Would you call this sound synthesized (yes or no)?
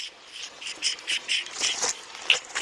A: no